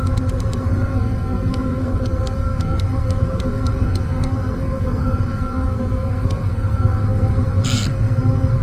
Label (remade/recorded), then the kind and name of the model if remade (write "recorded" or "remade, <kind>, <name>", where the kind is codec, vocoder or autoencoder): remade, codec, SNAC